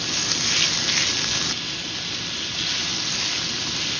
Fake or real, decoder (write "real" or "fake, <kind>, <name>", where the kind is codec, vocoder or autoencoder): real